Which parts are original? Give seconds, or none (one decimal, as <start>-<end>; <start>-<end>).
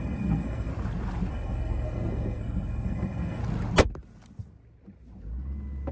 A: 0.7-1.3; 3.4-5.9